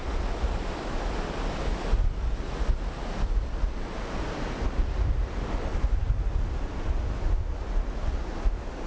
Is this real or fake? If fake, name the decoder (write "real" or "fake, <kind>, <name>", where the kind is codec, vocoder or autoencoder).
real